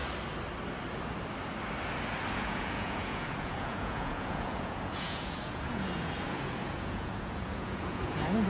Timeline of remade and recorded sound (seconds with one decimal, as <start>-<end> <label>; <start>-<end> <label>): 0.0-2.3 recorded; 2.3-8.5 remade